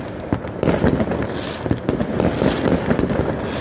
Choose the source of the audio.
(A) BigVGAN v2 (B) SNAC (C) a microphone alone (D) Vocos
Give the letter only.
C